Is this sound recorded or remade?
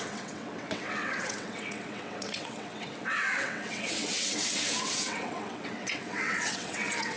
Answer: remade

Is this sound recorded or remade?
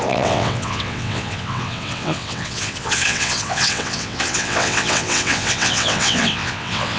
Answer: remade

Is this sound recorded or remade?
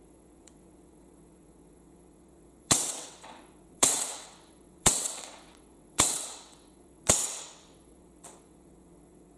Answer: remade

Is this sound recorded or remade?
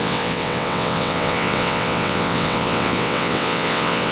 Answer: remade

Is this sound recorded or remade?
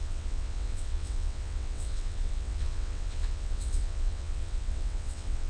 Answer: remade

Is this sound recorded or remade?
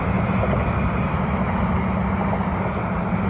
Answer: recorded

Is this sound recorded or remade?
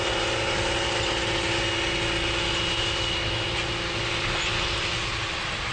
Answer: recorded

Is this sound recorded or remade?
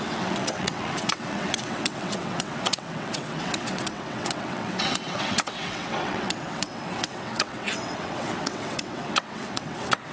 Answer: remade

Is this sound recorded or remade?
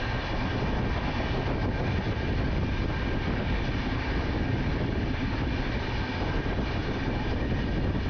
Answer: recorded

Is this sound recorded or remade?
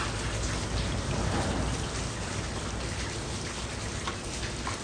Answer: recorded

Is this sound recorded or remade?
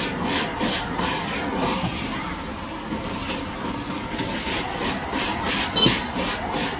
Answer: recorded